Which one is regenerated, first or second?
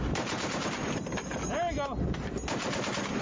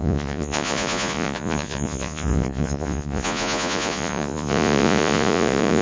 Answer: second